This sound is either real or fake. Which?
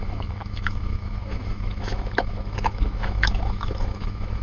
fake